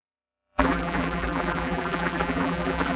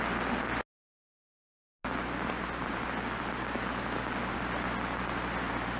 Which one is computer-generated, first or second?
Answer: first